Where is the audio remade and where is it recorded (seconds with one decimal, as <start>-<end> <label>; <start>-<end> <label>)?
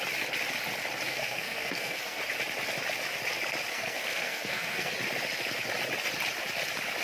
0.0-1.1 recorded; 1.1-2.2 remade; 2.2-3.7 recorded; 3.7-4.9 remade; 4.9-7.0 recorded